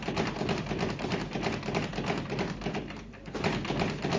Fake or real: real